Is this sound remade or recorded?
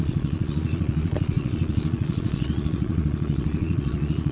remade